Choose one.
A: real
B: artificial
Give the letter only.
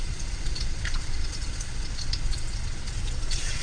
B